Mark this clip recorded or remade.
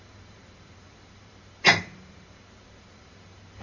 remade